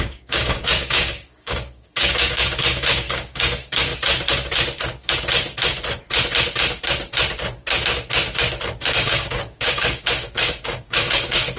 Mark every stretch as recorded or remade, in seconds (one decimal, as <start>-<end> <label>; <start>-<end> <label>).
0.0-3.9 remade; 3.9-8.9 recorded; 8.9-11.6 remade